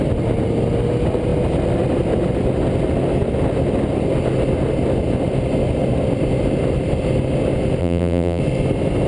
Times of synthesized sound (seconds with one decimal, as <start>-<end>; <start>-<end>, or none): 7.8-8.4